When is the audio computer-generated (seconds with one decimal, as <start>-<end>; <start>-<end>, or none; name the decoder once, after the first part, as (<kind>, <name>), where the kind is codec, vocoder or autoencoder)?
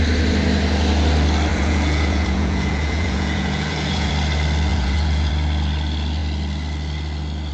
1.5-4.1 (vocoder, Vocos); 4.7-5.3